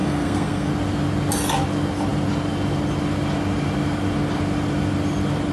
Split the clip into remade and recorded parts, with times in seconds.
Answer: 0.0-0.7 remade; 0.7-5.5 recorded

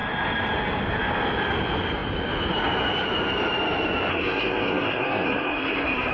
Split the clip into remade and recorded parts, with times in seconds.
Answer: 0.0-4.1 recorded; 4.1-6.1 remade